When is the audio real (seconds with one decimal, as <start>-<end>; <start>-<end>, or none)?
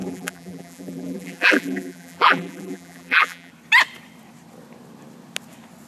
3.5-5.9